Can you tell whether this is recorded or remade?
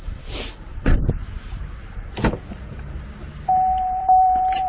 remade